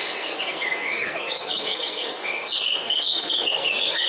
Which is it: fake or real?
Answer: fake